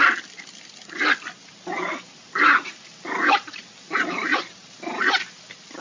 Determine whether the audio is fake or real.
real